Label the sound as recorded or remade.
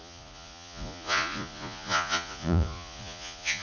remade